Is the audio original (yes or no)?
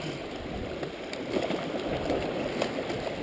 yes